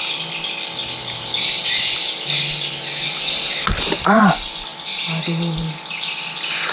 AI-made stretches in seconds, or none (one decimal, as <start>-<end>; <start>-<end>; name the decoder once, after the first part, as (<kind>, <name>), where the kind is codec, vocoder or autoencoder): 1.0-4.2 (vocoder, BigVGAN v2); 4.7-5.6